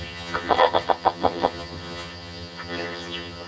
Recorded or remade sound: remade